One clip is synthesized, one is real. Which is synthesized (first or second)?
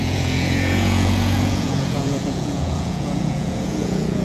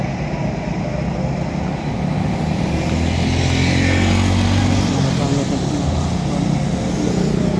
first